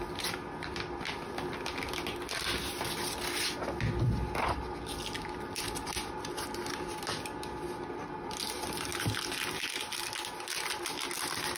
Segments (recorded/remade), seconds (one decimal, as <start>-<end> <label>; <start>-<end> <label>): 0.0-11.6 recorded